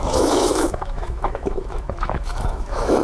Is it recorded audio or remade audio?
remade